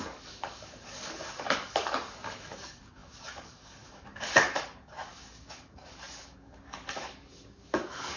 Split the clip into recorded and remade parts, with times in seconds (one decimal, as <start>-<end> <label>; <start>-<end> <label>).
0.0-8.2 remade